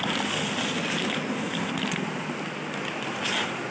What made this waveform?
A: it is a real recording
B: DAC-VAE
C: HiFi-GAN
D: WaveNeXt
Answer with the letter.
A